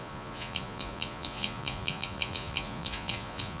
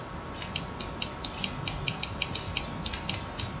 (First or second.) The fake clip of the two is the first